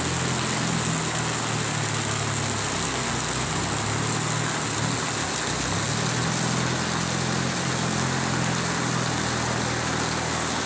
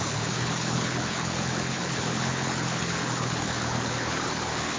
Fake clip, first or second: second